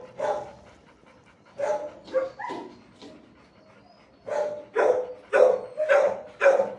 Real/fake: real